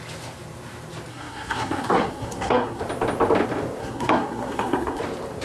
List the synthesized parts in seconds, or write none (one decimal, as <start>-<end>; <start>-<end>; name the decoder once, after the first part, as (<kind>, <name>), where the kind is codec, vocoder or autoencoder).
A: 1.1-2.8 (codec, SNAC); 3.8-5.0